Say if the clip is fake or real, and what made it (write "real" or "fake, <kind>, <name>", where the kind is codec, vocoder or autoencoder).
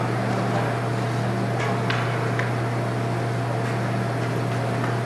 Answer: real